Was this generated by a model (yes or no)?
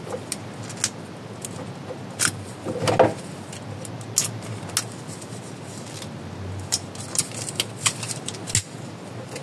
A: no